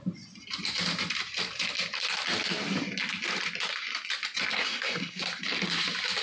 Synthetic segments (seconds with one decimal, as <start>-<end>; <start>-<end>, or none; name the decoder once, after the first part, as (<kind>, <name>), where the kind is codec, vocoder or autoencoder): 4.5-5.2 (codec, SNAC)